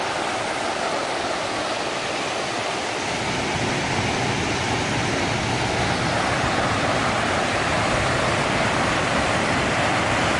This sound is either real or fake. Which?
real